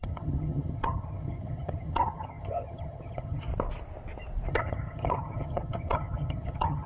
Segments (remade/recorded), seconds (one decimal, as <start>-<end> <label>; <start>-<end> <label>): 0.0-3.5 remade; 3.5-4.5 recorded; 4.5-6.9 remade